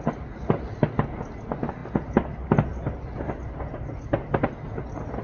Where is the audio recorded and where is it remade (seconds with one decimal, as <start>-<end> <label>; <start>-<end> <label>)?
0.0-5.2 recorded